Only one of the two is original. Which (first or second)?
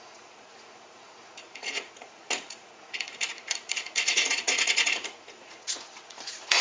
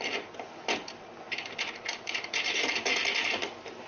second